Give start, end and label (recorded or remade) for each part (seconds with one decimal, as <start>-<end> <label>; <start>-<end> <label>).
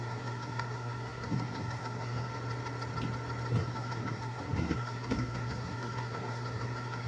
0.0-2.3 remade; 2.3-3.5 recorded; 3.5-7.1 remade